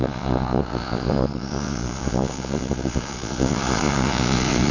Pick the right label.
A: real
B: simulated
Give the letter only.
B